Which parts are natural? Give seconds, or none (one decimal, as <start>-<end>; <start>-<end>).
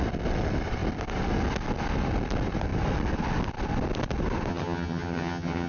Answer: 0.0-4.5